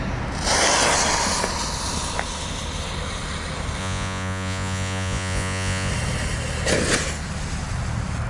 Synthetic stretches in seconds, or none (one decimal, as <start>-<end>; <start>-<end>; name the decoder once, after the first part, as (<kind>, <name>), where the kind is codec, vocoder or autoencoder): 3.8-5.9 (vocoder, Vocos)